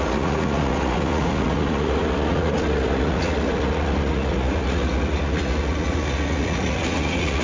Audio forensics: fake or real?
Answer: fake